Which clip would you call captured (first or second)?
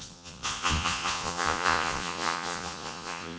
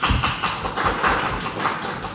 second